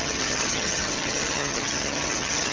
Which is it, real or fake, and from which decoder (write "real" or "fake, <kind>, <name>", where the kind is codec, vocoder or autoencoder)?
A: fake, vocoder, HiFi-GAN